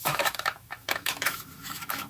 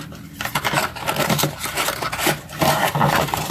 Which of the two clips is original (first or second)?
second